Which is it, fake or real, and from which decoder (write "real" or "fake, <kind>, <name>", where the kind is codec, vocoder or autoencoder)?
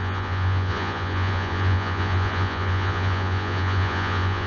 fake, vocoder, Vocos